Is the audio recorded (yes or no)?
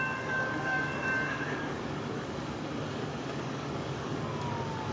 no